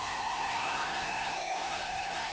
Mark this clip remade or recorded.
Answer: remade